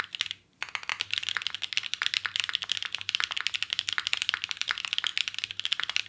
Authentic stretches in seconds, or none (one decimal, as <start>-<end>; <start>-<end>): 0.0-0.9; 4.6-5.1